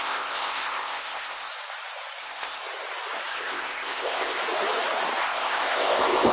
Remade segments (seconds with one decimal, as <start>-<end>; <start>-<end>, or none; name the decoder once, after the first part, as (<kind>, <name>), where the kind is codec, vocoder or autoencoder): 0.0-1.5 (codec, ZipCodec); 2.2-2.6; 3.3-4.4; 5.2-6.3